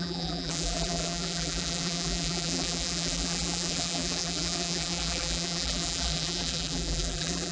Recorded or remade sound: remade